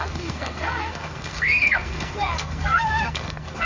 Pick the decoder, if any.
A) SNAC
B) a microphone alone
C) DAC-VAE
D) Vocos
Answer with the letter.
A